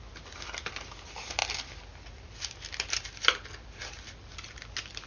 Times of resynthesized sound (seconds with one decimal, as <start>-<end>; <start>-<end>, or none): none

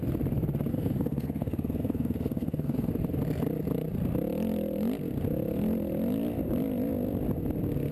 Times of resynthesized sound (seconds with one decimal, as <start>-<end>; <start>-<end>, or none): 0.7-2.9

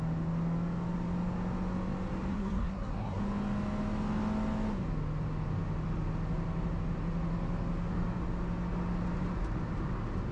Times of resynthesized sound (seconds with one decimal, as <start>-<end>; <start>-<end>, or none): 2.3-3.2

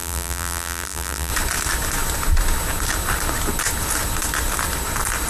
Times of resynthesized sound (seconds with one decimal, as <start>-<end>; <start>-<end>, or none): 0.0-1.3

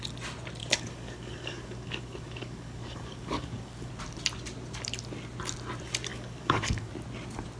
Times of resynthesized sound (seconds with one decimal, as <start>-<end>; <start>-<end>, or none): 0.6-3.9; 6.1-6.9

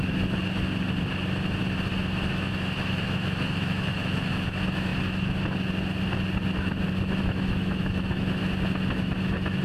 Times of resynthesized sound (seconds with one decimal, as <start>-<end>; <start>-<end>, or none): 0.0-0.4; 2.3-4.9; 7.2-8.4; 8.9-9.6

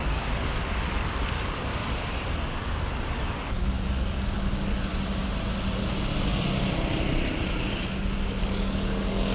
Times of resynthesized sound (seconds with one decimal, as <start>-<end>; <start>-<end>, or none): 0.0-1.7; 3.3-4.9; 8.4-9.3